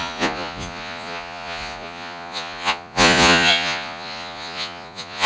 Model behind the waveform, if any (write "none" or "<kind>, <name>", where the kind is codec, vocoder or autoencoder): vocoder, Vocos